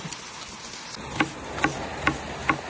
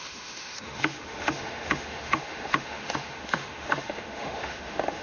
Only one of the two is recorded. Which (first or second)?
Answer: first